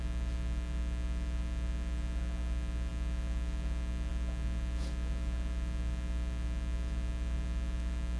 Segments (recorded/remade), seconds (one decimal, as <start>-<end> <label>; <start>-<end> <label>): 0.0-8.2 recorded